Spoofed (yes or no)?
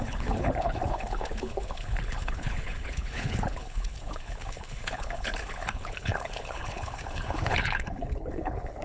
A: yes